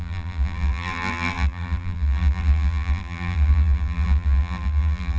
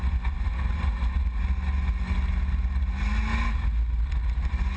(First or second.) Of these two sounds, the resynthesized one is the first